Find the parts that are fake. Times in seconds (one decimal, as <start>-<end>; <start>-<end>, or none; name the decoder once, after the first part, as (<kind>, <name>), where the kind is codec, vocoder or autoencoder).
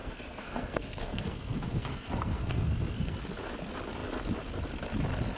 0.0-3.2 (codec, SNAC)